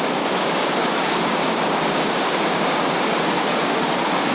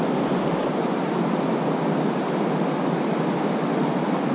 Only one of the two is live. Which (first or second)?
second